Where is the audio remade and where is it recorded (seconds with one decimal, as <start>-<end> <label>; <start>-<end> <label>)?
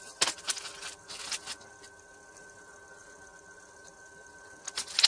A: 0.0-5.1 recorded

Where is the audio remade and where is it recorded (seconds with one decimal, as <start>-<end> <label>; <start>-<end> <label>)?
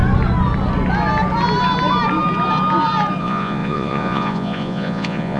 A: 0.0-3.2 recorded; 3.2-5.4 remade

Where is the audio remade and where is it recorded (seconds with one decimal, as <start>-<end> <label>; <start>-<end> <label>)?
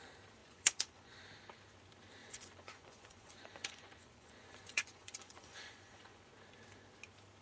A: 0.0-0.4 recorded; 0.4-1.2 remade; 1.2-2.2 recorded; 2.2-6.3 remade; 6.3-7.4 recorded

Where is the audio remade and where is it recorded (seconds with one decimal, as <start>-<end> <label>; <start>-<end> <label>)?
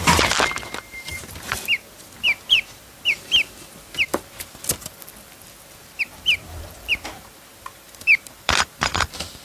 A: 0.0-9.4 remade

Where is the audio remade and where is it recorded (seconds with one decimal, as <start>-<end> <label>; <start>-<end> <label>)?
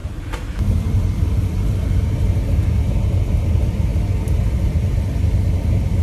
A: 0.0-6.0 recorded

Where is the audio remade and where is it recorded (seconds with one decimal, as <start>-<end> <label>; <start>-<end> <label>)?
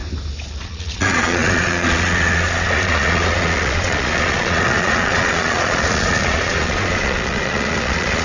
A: 0.0-0.6 recorded; 0.6-8.2 remade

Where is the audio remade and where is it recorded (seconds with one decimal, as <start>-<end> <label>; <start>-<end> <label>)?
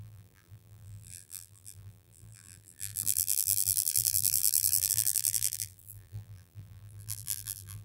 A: 0.0-7.8 remade